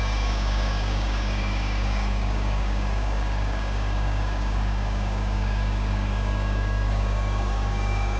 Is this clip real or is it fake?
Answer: fake